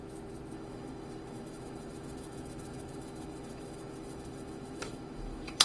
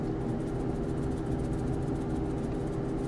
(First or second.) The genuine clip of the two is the second